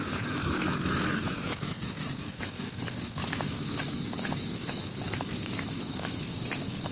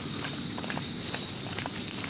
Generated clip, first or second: first